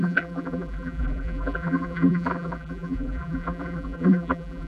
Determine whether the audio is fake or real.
fake